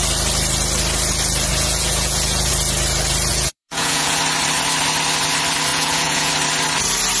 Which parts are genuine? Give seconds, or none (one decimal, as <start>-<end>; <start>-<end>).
0.0-1.5; 2.5-3.3; 4.2-5.7; 6.3-7.2